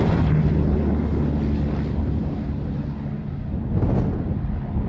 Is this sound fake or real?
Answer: real